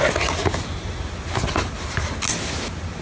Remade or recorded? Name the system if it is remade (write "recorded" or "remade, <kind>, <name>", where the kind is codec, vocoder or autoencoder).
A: recorded